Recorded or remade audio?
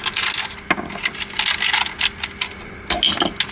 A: recorded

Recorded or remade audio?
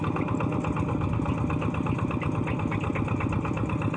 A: recorded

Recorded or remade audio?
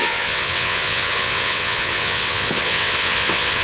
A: remade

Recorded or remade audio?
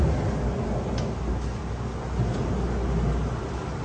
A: recorded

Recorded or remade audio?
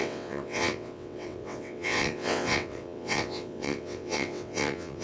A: remade